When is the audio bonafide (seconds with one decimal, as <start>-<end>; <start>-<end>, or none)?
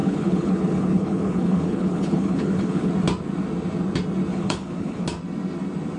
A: 2.9-4.3; 5.0-6.0